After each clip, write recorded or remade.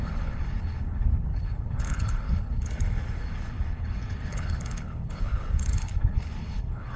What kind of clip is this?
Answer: remade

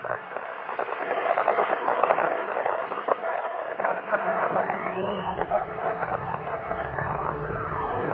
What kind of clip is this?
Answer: remade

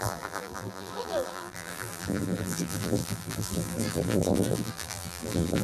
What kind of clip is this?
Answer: remade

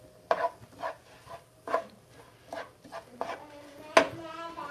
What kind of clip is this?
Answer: recorded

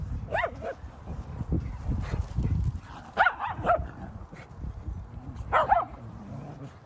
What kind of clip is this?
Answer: recorded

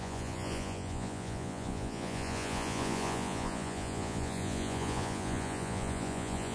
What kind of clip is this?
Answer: remade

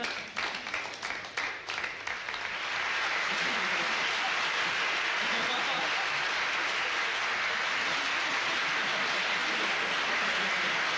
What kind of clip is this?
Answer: recorded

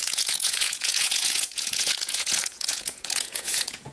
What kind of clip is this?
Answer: remade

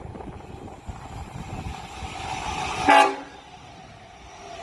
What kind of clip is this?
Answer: recorded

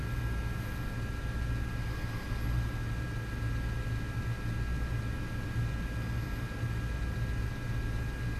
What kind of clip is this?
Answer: recorded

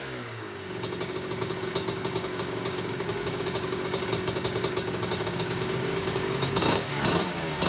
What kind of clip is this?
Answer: remade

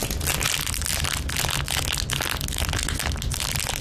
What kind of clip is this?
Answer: recorded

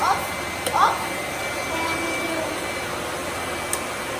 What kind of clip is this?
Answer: recorded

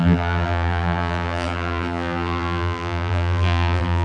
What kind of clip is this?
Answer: remade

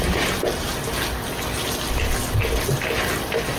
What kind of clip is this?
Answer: recorded